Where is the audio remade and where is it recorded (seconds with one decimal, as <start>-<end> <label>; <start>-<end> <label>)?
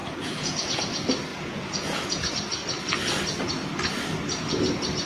0.0-0.8 remade; 0.8-1.3 recorded; 1.3-2.3 remade; 2.3-5.1 recorded